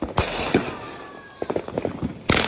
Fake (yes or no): no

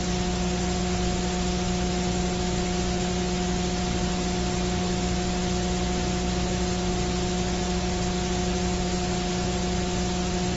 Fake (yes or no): no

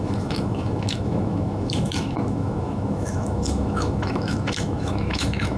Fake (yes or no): yes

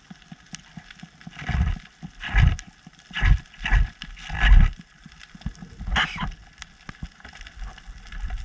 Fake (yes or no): no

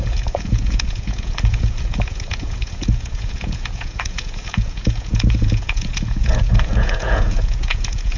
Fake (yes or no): yes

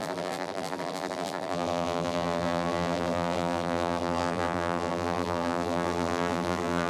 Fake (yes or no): yes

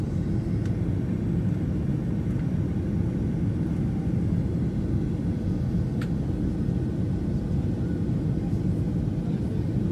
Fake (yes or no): no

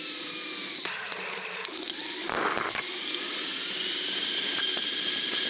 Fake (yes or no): no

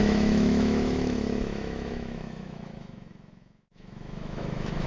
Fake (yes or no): yes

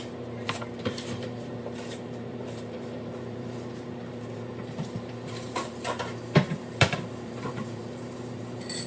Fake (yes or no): yes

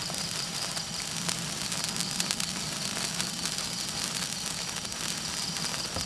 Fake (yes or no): no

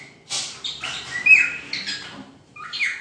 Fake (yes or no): no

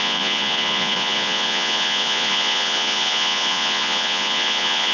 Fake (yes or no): yes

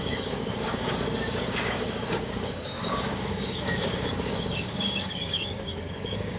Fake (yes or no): yes